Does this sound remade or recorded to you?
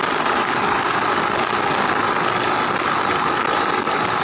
recorded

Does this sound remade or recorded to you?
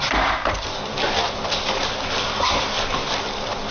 recorded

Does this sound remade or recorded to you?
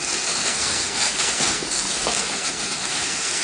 remade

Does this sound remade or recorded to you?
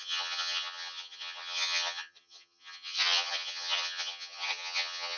remade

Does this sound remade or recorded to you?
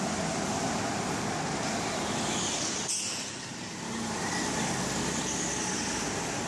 recorded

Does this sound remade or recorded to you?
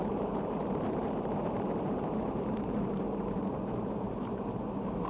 remade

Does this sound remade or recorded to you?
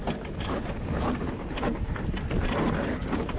recorded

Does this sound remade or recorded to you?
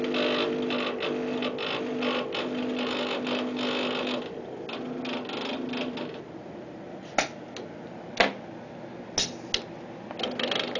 recorded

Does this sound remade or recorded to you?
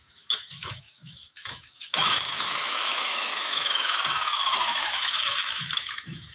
remade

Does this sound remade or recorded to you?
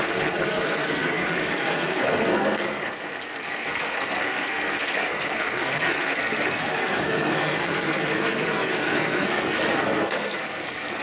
remade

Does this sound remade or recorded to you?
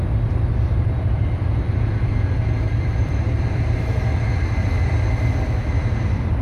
remade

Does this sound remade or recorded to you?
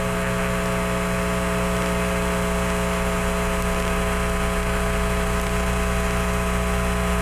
recorded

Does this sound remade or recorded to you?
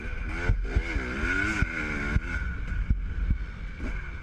recorded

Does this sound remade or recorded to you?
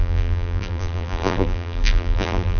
remade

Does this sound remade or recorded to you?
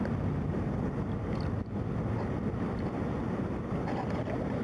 recorded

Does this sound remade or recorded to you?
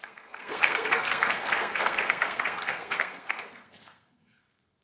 remade